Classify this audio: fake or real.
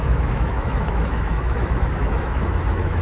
fake